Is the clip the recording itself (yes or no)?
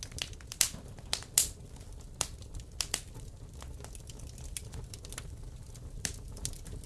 yes